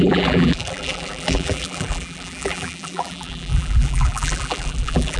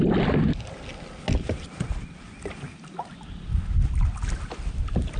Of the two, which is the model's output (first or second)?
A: first